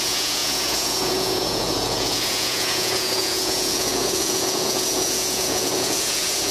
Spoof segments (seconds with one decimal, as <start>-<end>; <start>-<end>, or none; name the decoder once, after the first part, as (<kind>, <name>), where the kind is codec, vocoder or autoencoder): 0.0-6.5 (vocoder, Vocos)